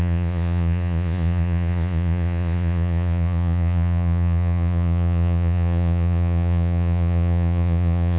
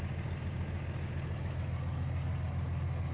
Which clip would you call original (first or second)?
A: second